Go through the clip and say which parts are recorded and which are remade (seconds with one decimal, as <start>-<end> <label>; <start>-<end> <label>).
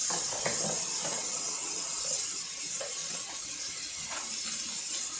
0.0-1.1 recorded; 1.1-2.6 remade; 2.6-3.0 recorded; 3.0-3.6 remade; 3.6-5.2 recorded